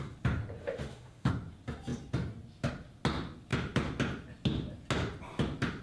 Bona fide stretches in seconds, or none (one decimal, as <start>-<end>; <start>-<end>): 0.0-0.6; 1.3-5.8